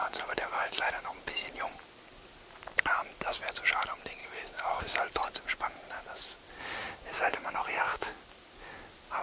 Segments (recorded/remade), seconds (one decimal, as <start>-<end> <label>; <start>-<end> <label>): 0.0-1.2 remade; 1.2-4.2 recorded; 4.2-4.8 remade; 4.8-6.8 recorded; 6.8-8.1 remade; 8.1-9.2 recorded